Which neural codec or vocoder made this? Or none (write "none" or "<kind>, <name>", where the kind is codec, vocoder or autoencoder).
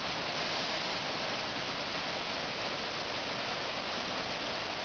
none